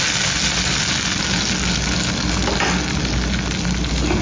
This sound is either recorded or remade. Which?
recorded